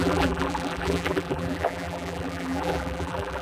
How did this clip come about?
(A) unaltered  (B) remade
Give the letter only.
B